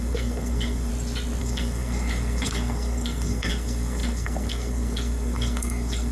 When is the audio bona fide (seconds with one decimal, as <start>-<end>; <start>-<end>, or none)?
0.9-1.4